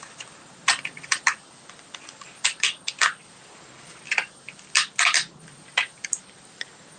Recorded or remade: recorded